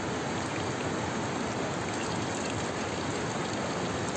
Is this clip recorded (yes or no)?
yes